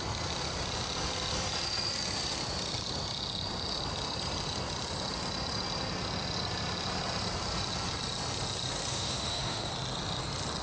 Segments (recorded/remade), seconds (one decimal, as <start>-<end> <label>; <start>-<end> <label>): 0.0-8.9 recorded; 8.9-9.7 remade; 9.7-10.6 recorded